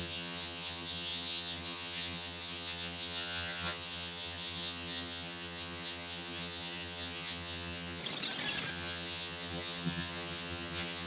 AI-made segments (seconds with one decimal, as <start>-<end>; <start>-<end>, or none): 0.0-8.0; 8.7-11.1